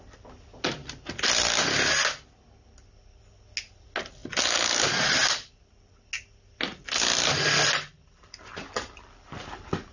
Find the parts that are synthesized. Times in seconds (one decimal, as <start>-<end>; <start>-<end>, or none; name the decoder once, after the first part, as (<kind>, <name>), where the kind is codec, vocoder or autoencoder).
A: none